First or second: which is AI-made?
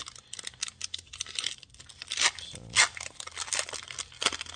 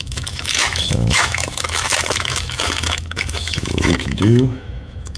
second